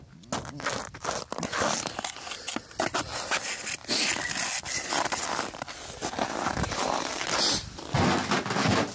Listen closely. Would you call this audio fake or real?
real